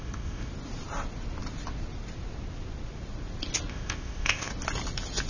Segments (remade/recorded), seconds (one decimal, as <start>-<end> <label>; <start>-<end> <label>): 0.0-0.5 remade; 0.5-3.7 recorded; 3.7-4.5 remade; 4.5-5.3 recorded